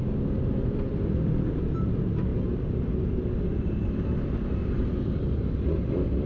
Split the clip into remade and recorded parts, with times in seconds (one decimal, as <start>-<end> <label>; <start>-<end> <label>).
0.0-0.6 recorded; 0.6-1.7 remade; 1.7-4.6 recorded; 4.6-5.5 remade; 5.5-6.3 recorded